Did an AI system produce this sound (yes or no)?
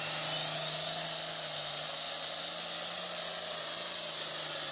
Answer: no